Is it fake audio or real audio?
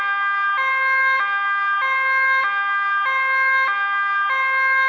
real